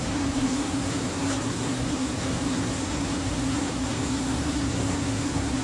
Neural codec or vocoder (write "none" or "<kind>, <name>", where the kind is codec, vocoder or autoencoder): codec, SNAC